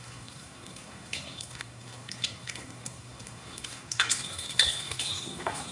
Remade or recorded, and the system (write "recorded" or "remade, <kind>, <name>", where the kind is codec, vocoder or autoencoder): remade, codec, SNAC